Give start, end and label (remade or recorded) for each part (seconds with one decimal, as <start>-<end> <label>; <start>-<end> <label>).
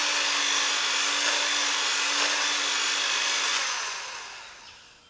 0.0-3.5 recorded; 3.5-4.0 remade; 4.0-5.1 recorded